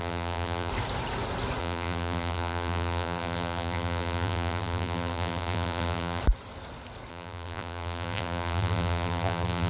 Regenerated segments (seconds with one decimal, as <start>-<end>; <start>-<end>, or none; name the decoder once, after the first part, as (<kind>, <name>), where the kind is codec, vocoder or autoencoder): 0.0-0.7 (vocoder, BigVGAN v2); 1.6-6.2; 7.1-9.7